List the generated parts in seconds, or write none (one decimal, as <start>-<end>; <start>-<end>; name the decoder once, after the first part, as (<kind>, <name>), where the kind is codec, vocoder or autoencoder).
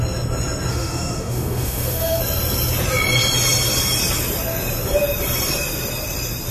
0.7-2.2 (autoencoder, DAC-VAE)